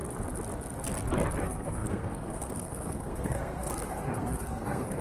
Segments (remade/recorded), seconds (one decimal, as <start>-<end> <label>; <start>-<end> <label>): 0.0-1.4 recorded; 1.4-5.0 remade